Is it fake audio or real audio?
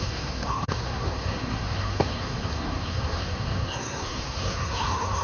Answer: fake